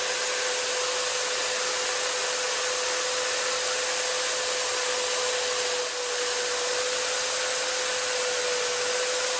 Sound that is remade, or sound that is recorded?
recorded